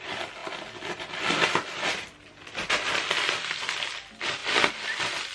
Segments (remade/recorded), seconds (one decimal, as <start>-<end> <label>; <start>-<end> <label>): 0.0-5.3 recorded